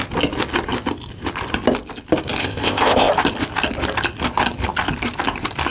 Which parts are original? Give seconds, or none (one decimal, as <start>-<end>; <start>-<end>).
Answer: 0.0-2.4; 3.1-5.7